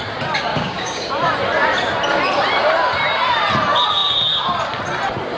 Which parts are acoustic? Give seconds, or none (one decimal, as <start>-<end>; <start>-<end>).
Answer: 0.0-0.5; 1.1-5.4